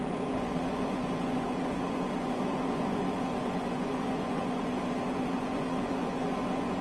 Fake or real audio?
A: fake